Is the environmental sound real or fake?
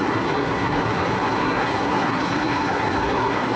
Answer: fake